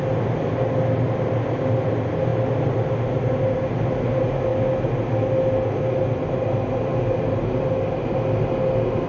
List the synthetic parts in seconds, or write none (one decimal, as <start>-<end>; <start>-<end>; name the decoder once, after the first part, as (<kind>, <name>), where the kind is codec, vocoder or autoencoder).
none